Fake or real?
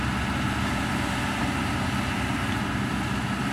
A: real